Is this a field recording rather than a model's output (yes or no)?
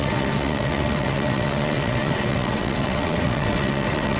no